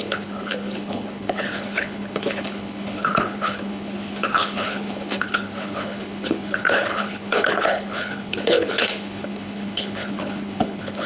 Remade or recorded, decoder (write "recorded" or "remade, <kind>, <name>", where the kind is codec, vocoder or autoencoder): remade, codec, HILCodec